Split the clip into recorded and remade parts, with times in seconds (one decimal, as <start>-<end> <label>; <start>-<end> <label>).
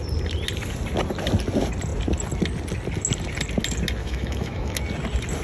0.0-4.0 recorded; 4.0-4.8 remade; 4.8-5.4 recorded